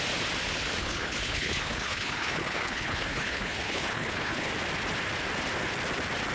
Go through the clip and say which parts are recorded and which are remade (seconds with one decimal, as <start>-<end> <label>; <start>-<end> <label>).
0.0-0.8 recorded; 0.8-4.5 remade; 4.5-6.3 recorded